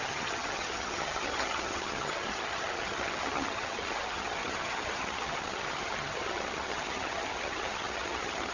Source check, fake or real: fake